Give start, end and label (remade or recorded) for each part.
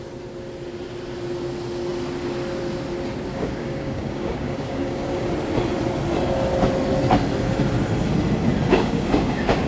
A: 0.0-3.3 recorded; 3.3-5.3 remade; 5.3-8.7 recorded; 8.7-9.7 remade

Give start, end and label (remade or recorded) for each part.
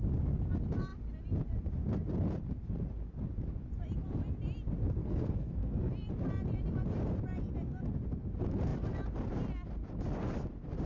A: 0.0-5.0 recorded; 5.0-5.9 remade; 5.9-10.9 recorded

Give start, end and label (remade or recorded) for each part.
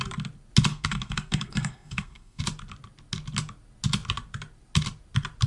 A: 0.0-0.7 recorded; 0.7-2.4 remade; 2.4-5.5 recorded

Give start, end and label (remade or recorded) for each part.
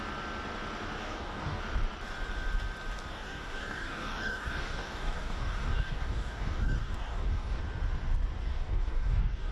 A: 0.0-1.0 recorded; 1.0-1.6 remade; 1.6-3.1 recorded; 3.1-7.6 remade; 7.6-8.4 recorded; 8.4-9.5 remade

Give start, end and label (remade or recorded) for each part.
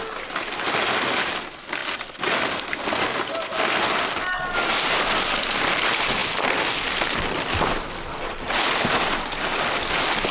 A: 0.0-10.3 recorded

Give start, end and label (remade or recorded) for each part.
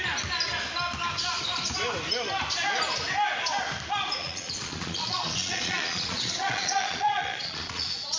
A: 0.0-4.2 recorded; 4.2-8.2 remade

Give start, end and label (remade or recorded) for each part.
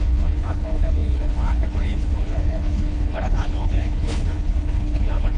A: 0.0-5.4 remade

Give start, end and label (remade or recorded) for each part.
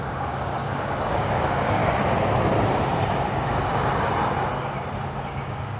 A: 0.0-1.8 remade; 1.8-5.3 recorded; 5.3-5.8 remade